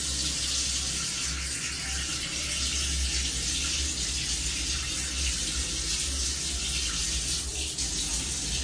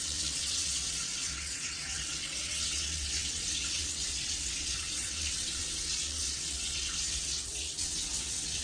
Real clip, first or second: first